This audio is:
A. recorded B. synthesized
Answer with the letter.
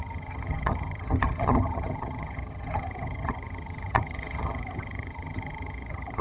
B